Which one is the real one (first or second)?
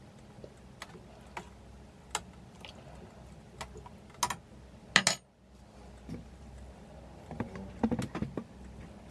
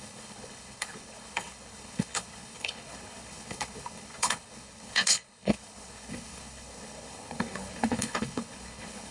first